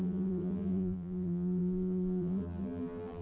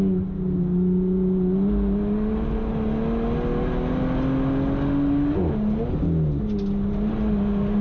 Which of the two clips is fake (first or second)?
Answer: first